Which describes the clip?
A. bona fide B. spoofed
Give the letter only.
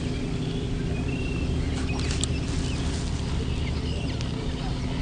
A